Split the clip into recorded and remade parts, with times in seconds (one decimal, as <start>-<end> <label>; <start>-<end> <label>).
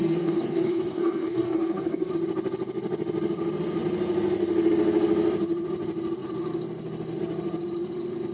0.0-2.1 remade; 2.1-8.3 recorded